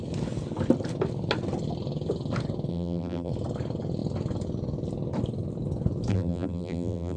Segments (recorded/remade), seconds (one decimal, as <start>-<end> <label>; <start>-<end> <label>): 0.0-2.7 recorded; 2.7-3.3 remade; 3.3-6.1 recorded; 6.1-7.2 remade